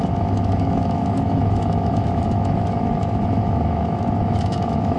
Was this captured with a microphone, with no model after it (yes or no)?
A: no